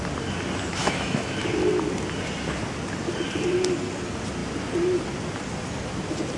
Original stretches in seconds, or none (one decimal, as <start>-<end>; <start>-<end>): 0.0-0.8; 1.5-6.4